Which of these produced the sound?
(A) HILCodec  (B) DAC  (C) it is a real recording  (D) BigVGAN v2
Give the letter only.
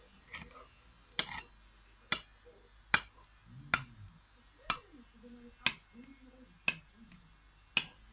C